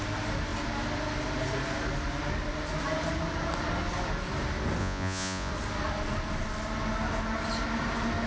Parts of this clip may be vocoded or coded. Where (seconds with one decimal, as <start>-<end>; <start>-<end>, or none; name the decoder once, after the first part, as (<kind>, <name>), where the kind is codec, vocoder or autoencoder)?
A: 4.8-5.5 (vocoder, Vocos)